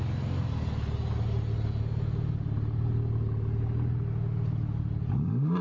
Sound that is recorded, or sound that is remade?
recorded